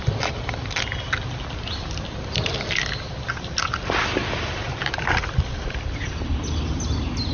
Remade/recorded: recorded